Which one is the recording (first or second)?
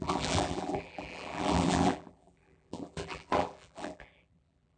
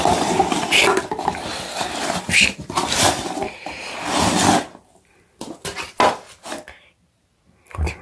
second